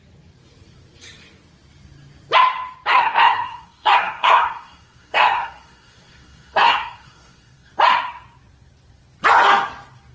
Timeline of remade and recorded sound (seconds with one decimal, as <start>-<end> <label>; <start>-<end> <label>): 0.0-2.9 recorded; 2.9-7.7 remade; 7.7-10.1 recorded